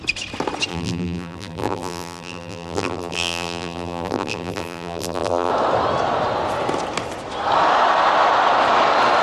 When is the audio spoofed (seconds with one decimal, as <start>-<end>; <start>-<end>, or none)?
0.7-5.5